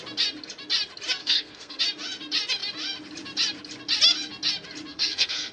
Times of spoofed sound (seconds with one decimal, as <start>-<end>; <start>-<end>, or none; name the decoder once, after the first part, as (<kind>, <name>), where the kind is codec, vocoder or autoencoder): 1.2-1.8 (codec, SNAC); 4.9-5.5

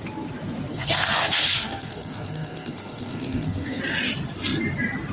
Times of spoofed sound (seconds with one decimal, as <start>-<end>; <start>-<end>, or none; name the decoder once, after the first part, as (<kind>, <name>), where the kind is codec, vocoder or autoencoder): 0.7-3.8 (codec, SNAC)

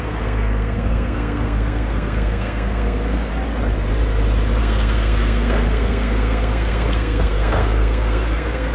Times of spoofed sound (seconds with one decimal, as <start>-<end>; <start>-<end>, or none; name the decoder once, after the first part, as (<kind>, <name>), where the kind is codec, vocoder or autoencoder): 0.0-3.3 (codec, SNAC); 4.6-8.7

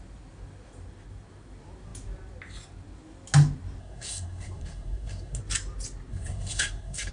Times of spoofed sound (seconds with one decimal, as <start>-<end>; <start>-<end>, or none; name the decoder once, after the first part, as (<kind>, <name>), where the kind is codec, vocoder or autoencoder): 3.8-5.4 (codec, SNAC); 6.1-7.1

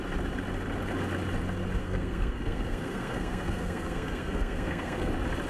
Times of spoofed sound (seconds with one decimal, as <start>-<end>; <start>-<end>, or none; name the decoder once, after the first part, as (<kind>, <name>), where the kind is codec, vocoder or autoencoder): 1.8-5.1 (codec, SNAC)

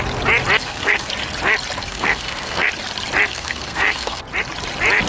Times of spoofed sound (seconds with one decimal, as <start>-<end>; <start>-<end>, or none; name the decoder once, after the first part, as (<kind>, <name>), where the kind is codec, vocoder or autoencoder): 0.6-1.1 (codec, SNAC); 1.8-2.7; 3.3-4.2